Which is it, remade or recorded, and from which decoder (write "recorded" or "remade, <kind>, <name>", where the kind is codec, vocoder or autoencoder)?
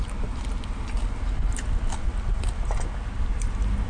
recorded